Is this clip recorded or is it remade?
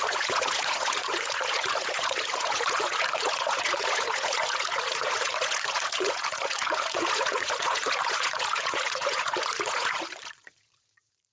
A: remade